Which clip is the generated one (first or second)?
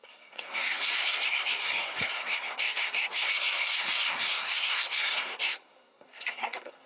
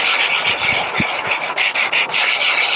first